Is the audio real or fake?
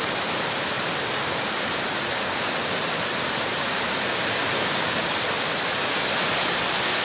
real